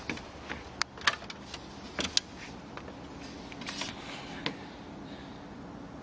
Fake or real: real